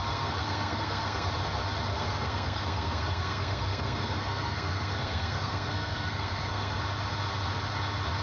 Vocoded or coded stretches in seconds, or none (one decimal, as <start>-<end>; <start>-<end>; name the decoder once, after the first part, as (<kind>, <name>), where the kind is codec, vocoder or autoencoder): 0.0-1.3 (codec, SNAC); 1.9-6.8